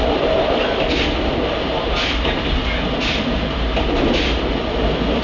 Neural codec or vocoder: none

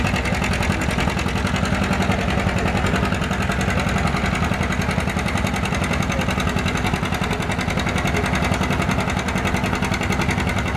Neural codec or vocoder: none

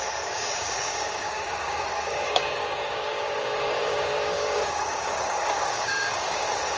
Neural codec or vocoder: codec, DAC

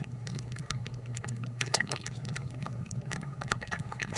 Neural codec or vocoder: codec, SNAC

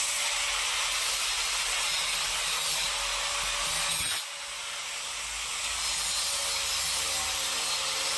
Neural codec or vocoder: none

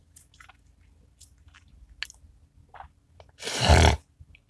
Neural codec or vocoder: none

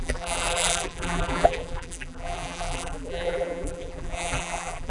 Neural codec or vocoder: vocoder, BigVGAN v2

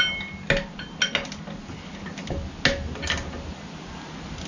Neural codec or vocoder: none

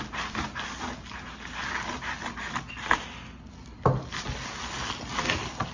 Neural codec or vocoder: none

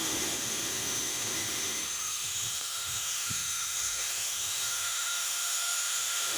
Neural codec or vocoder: autoencoder, DAC-VAE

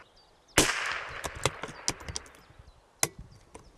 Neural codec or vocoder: none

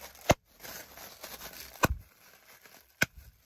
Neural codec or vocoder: none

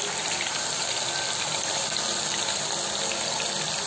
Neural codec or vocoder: none